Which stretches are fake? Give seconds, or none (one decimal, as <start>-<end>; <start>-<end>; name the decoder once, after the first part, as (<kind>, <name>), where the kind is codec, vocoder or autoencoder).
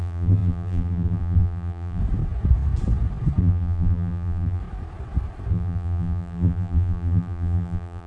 0.0-2.0 (vocoder, BigVGAN v2); 3.4-4.6; 5.5-8.1